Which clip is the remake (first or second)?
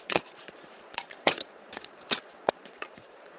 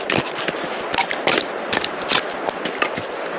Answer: first